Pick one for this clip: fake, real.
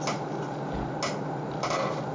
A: real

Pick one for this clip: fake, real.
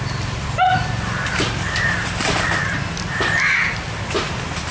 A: real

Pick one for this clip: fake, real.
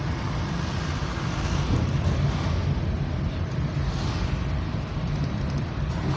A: real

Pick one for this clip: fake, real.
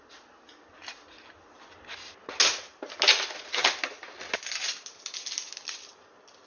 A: real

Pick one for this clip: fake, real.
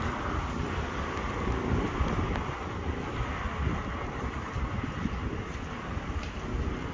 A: real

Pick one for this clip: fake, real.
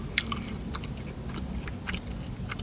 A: real